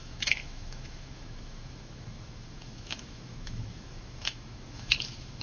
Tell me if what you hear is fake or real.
fake